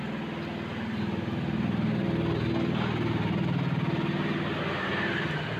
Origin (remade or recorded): recorded